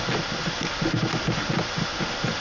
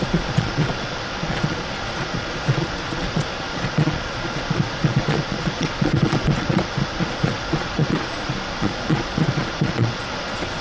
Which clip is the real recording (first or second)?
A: first